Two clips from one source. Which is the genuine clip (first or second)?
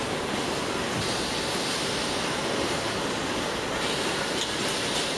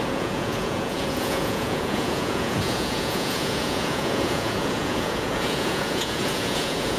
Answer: first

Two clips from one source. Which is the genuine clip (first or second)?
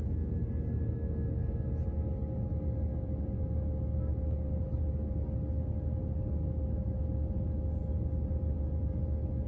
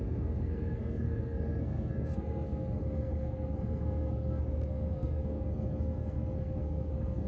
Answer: first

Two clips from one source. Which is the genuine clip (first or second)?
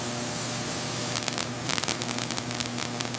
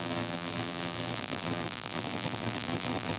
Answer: first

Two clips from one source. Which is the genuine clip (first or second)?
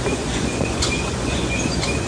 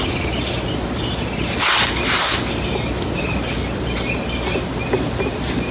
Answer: second